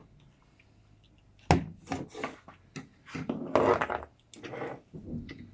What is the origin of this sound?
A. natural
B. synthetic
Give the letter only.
A